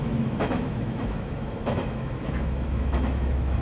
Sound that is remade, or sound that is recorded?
remade